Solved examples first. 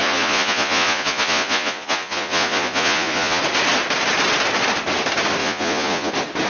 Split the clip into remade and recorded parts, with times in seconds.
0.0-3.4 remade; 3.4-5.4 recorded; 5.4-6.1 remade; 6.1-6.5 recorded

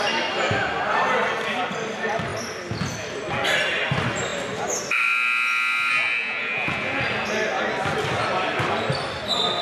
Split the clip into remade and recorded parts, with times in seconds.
0.0-6.2 recorded; 6.2-7.0 remade; 7.0-9.6 recorded

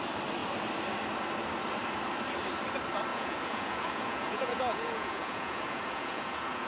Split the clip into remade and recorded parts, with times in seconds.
0.0-3.1 recorded; 3.1-6.7 remade

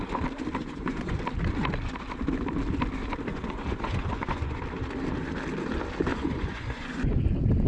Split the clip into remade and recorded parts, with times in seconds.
0.0-0.6 recorded; 0.6-1.2 remade; 1.2-3.3 recorded; 3.3-4.6 remade; 4.6-6.1 recorded; 6.1-7.2 remade; 7.2-7.7 recorded

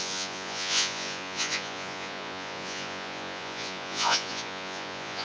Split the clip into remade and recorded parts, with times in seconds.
0.0-5.2 remade

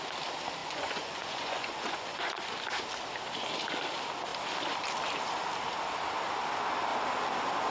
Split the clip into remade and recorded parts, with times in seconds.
0.0-0.6 recorded; 0.6-2.5 remade; 2.5-7.7 recorded

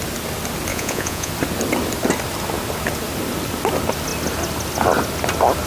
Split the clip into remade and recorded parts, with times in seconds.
0.0-0.7 recorded; 0.7-1.3 remade; 1.3-5.7 recorded